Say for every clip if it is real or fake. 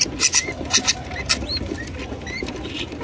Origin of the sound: real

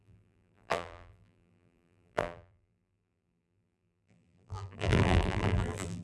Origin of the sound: fake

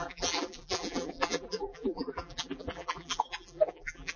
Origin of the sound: fake